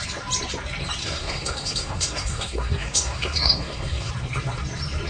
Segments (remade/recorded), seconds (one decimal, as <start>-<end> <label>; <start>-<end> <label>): 0.0-1.0 recorded; 1.0-4.1 remade; 4.1-5.1 recorded